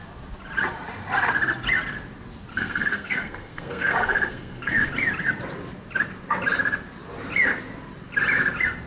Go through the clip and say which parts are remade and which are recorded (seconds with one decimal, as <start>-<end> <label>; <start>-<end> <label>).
0.0-2.5 recorded; 2.5-4.9 remade; 4.9-8.9 recorded